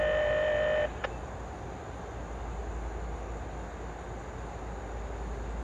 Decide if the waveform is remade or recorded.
recorded